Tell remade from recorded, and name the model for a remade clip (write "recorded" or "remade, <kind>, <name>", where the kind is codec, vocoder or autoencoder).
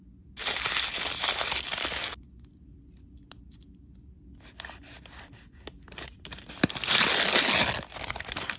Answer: recorded